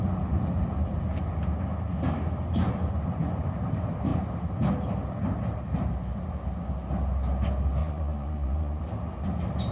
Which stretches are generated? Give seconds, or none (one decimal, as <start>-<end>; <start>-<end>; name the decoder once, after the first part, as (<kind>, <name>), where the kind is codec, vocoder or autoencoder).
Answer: 7.8-8.8 (vocoder, Vocos)